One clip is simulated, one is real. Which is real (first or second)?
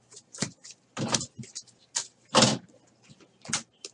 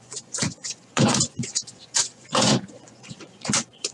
first